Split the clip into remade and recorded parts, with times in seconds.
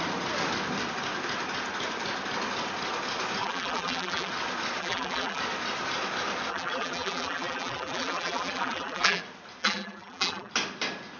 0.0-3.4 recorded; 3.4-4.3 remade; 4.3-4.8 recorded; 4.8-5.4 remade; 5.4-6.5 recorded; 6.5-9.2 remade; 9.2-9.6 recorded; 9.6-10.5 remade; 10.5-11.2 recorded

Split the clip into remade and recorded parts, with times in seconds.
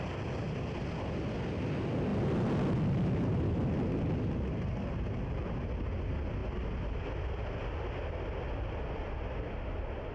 0.0-10.1 recorded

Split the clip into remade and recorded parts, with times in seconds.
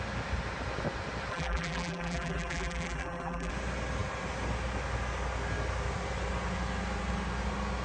0.0-1.3 recorded; 1.3-3.5 remade; 3.5-7.8 recorded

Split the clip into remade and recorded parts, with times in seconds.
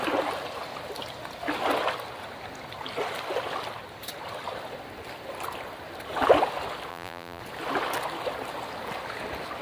0.0-6.9 recorded; 6.9-7.4 remade; 7.4-9.6 recorded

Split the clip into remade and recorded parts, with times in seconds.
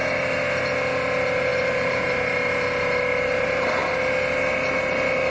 0.0-5.3 recorded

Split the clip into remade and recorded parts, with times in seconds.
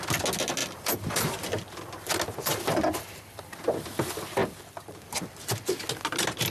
0.0-0.6 recorded; 0.6-1.6 remade; 1.6-6.5 recorded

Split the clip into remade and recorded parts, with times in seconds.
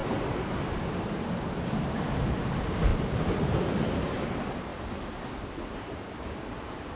0.0-4.7 remade; 4.7-5.7 recorded; 5.7-7.0 remade